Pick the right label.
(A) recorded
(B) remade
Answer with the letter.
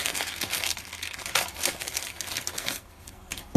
B